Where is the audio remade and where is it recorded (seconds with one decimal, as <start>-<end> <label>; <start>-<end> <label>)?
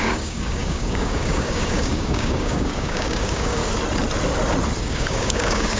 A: 0.0-3.6 remade; 3.6-4.8 recorded; 4.8-5.8 remade